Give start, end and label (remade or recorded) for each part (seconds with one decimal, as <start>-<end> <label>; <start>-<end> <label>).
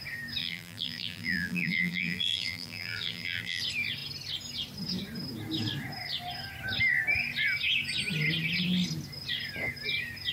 0.0-0.4 recorded; 0.4-3.6 remade; 3.6-10.3 recorded